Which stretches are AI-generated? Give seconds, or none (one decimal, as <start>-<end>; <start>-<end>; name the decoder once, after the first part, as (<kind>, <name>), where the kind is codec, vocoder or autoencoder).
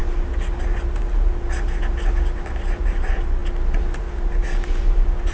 none